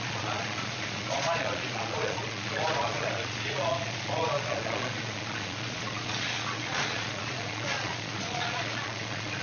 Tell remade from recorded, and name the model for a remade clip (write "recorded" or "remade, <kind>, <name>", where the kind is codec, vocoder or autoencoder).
remade, vocoder, Vocos